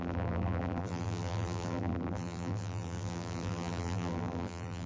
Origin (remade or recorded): remade